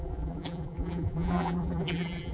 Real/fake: fake